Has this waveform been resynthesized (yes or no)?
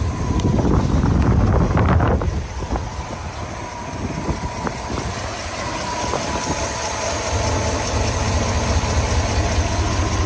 no